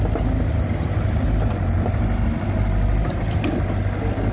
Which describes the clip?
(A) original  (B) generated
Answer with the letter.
A